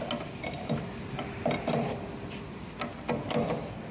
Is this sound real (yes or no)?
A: yes